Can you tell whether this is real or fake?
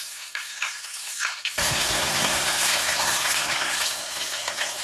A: fake